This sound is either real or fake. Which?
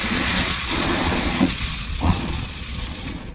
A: fake